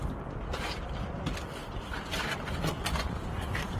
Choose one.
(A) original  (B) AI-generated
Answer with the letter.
A